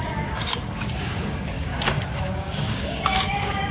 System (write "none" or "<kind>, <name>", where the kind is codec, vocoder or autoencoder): codec, DAC